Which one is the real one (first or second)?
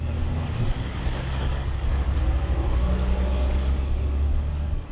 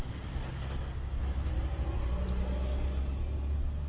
second